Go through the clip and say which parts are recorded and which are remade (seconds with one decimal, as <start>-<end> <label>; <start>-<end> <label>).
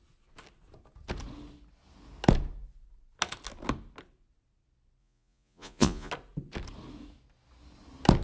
0.0-5.0 recorded; 5.0-6.1 remade; 6.1-8.2 recorded